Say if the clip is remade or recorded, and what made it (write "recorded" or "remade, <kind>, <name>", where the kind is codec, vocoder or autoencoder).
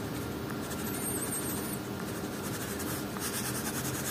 recorded